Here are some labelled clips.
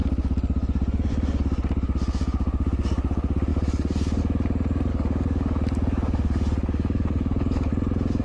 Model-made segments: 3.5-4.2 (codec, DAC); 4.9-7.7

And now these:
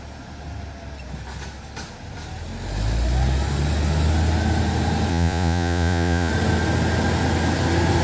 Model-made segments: 5.1-6.3 (vocoder, Vocos)

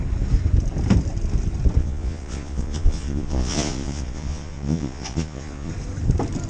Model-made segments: 1.8-5.7 (vocoder, Vocos)

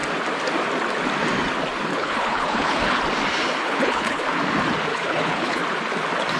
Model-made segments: 1.9-3.0 (codec, HILCodec); 3.6-4.2; 4.9-5.6

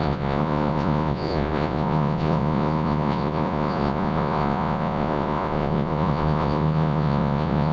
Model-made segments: 0.0-7.7 (vocoder, Vocos)

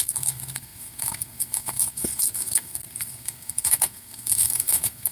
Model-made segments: 0.0-5.1 (codec, SNAC)

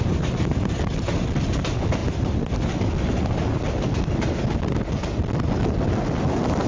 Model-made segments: none

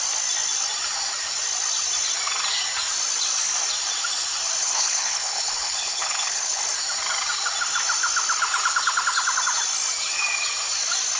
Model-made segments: 4.6-6.6 (codec, HILCodec)